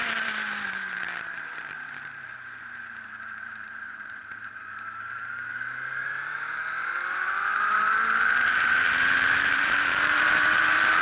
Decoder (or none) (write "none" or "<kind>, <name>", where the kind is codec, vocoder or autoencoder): vocoder, BigVGAN v2